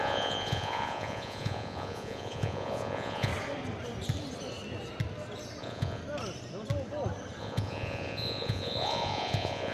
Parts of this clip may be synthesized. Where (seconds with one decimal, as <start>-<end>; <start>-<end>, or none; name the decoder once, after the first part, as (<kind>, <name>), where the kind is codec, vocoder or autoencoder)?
0.0-3.3 (vocoder, Vocos); 5.6-6.0; 7.4-9.7